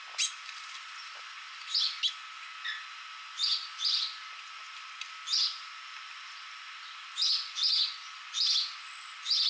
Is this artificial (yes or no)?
no